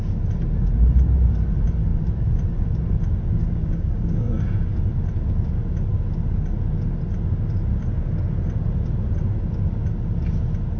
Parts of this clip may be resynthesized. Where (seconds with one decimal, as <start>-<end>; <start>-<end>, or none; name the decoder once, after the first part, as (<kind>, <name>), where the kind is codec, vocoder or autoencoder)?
3.4-4.3 (codec, DAC)

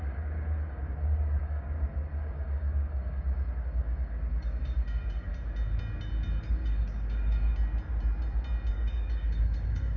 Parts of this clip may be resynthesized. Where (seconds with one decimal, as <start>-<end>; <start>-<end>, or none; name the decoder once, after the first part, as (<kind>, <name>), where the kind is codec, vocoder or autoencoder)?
0.0-5.3 (codec, DAC); 6.4-7.5; 8.7-10.0